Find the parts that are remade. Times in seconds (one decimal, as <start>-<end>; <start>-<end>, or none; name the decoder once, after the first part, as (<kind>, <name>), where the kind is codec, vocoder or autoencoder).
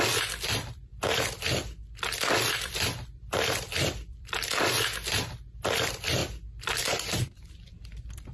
0.0-0.9 (vocoder, BigVGAN v2); 2.5-6.2; 7.7-8.3